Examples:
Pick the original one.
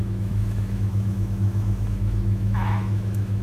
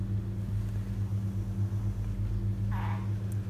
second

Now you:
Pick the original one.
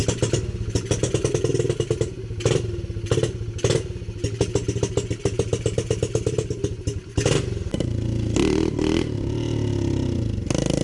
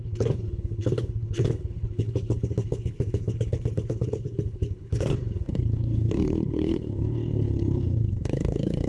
first